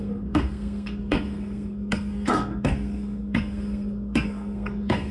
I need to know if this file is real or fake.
fake